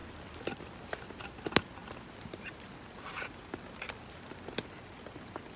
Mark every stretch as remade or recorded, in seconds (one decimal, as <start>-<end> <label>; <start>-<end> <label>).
0.0-5.6 recorded